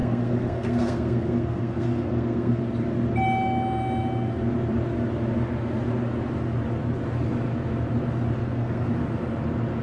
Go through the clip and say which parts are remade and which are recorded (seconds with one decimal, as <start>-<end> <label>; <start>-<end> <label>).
0.0-2.6 remade; 2.6-8.4 recorded; 8.4-8.9 remade; 8.9-9.8 recorded